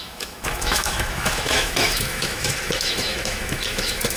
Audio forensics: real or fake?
fake